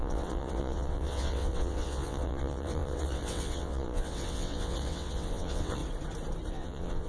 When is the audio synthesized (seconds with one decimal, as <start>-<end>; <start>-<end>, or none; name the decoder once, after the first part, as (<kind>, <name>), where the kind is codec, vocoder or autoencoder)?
0.0-5.8 (vocoder, WaveNeXt); 6.5-7.1

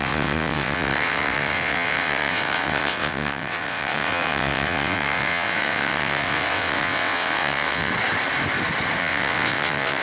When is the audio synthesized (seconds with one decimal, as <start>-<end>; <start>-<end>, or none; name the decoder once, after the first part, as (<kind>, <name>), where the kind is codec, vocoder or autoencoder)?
0.0-7.9 (vocoder, WaveNeXt); 9.0-10.0

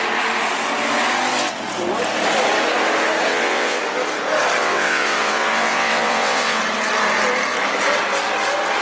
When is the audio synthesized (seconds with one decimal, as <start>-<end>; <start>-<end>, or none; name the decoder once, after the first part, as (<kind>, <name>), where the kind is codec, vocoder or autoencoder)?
3.3-3.8 (vocoder, WaveNeXt); 4.6-6.6

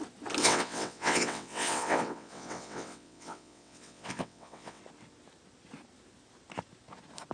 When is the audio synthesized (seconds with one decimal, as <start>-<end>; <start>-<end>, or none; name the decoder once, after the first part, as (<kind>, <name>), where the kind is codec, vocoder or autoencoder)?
0.4-4.8 (vocoder, WaveNeXt)

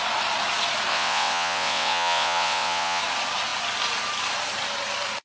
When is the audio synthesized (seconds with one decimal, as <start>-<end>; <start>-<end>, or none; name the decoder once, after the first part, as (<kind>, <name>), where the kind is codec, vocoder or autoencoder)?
0.9-3.0 (vocoder, WaveNeXt)

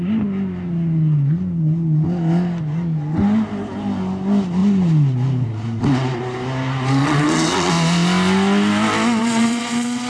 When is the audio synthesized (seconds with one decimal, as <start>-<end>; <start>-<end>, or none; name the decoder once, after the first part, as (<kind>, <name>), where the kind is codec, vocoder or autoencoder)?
7.0-7.7 (vocoder, WaveNeXt); 9.2-10.1

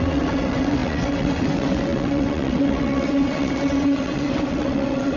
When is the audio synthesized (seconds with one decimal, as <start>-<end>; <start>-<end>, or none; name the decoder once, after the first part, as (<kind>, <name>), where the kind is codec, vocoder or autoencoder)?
0.0-5.2 (vocoder, WaveNeXt)

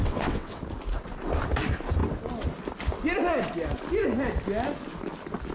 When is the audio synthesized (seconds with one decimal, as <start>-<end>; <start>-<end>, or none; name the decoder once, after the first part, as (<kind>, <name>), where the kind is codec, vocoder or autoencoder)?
0.0-0.6 (vocoder, WaveNeXt)